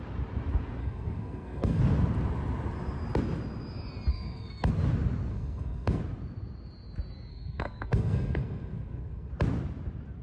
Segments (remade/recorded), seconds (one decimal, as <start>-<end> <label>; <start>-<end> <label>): 0.0-0.8 recorded; 0.8-1.8 remade; 1.8-4.1 recorded; 4.1-4.7 remade; 4.7-5.3 recorded; 5.3-6.0 remade; 6.0-7.3 recorded; 7.3-9.3 remade; 9.3-10.2 recorded